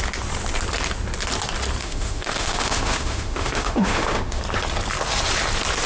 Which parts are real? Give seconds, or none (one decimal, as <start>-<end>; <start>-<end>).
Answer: 0.0-1.8; 4.4-5.9